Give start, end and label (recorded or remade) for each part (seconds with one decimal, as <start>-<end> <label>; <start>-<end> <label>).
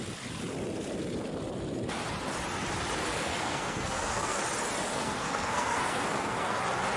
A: 0.0-3.1 recorded; 3.1-4.4 remade; 4.4-4.9 recorded; 4.9-6.6 remade; 6.6-7.0 recorded